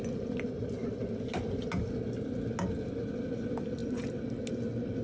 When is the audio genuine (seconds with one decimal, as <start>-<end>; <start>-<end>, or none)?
0.0-5.0